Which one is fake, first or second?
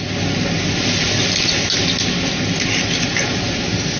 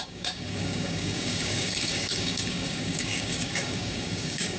second